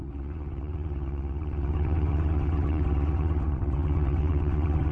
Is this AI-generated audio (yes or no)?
yes